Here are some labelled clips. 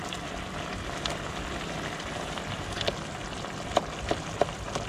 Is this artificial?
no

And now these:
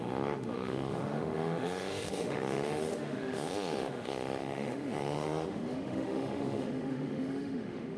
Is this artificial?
yes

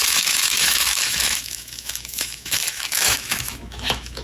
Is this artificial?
yes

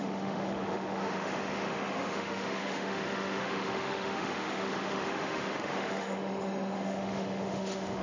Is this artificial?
yes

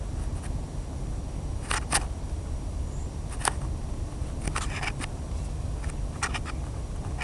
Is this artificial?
no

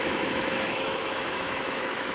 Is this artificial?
yes